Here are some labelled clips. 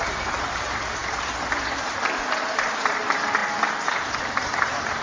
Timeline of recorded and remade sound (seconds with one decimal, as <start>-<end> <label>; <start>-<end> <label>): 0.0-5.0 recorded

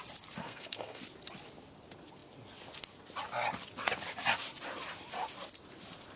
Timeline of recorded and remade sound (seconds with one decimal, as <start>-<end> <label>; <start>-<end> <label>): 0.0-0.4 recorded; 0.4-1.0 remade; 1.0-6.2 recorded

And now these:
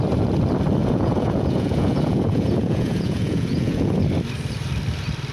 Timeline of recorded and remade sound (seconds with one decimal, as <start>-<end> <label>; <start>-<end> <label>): 0.0-0.8 recorded; 0.8-4.0 remade; 4.0-5.3 recorded